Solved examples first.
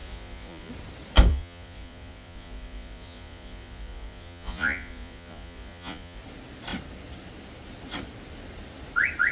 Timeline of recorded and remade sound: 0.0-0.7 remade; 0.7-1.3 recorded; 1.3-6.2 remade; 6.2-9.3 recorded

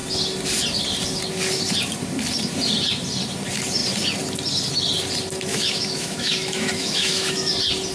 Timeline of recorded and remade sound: 0.0-5.5 recorded; 5.5-7.5 remade; 7.5-7.9 recorded